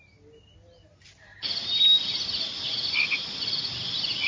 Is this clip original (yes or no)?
yes